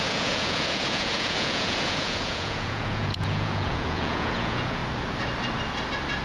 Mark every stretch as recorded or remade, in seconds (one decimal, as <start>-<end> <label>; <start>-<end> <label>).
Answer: 0.0-4.8 remade; 4.8-6.2 recorded